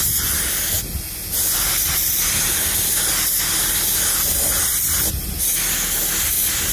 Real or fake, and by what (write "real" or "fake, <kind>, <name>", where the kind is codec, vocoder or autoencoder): real